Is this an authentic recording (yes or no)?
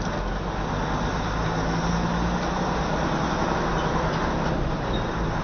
yes